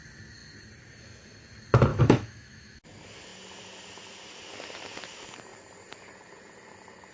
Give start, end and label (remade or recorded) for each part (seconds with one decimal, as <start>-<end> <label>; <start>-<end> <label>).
0.0-1.9 recorded; 1.9-2.8 remade; 2.8-7.1 recorded

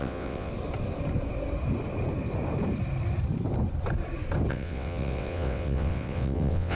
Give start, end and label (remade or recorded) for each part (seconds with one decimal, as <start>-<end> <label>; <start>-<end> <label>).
0.0-0.5 remade; 0.5-4.5 recorded; 4.5-6.7 remade

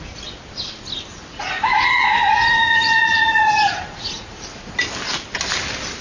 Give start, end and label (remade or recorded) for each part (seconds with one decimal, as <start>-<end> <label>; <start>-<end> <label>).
0.0-1.1 recorded; 1.1-4.7 remade; 4.7-6.0 recorded

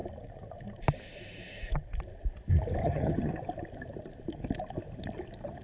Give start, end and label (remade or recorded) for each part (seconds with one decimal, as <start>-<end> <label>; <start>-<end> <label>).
0.0-2.8 recorded; 2.8-3.3 remade; 3.3-5.6 recorded

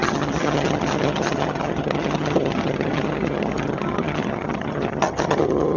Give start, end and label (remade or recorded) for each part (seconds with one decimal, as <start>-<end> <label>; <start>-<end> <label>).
0.0-5.8 remade

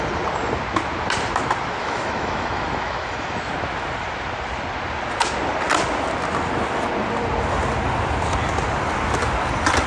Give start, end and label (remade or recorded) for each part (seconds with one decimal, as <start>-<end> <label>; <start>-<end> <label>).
0.0-1.8 recorded; 1.8-3.5 remade; 3.5-9.9 recorded

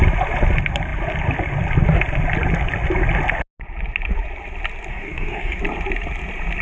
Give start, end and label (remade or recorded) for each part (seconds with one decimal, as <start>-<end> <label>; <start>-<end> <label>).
0.0-4.9 recorded; 4.9-5.6 remade; 5.6-6.6 recorded

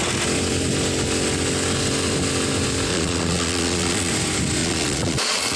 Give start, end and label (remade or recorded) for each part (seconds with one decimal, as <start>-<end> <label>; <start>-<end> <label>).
0.0-2.9 recorded; 2.9-4.1 remade; 4.1-4.6 recorded; 4.6-5.6 remade